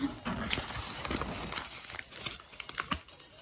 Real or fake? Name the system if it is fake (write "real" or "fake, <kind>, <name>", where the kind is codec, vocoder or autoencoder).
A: real